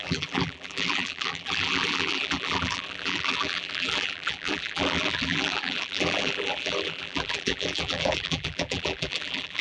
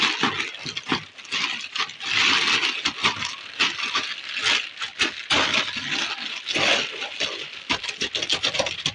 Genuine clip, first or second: second